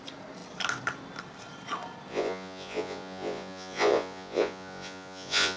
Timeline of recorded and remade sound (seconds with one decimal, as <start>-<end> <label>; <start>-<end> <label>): 0.0-2.1 recorded; 2.1-5.6 remade